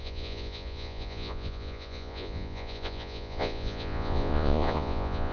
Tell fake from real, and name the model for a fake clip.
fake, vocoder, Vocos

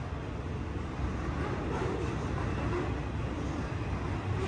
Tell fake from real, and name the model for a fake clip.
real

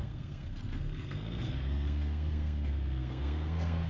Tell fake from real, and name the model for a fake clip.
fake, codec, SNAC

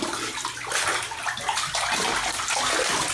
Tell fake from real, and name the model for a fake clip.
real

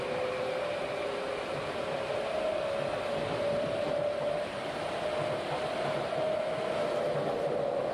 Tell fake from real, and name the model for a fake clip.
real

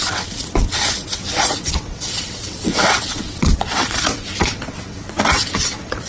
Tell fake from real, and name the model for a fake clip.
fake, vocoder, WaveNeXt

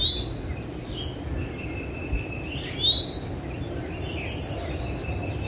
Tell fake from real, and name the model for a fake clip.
real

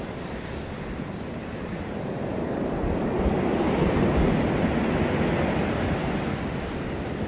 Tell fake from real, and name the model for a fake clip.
real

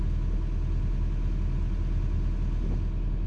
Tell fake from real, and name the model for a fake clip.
real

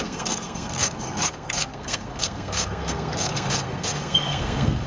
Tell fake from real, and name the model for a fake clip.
fake, codec, SNAC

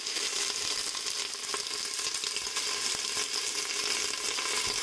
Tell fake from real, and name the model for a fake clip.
real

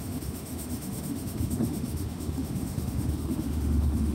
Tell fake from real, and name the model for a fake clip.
fake, autoencoder, DAC-VAE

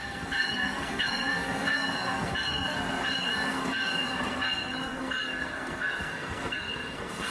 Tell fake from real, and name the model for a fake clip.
fake, codec, SNAC